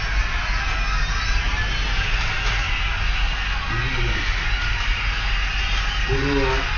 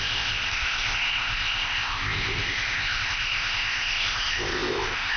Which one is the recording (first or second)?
first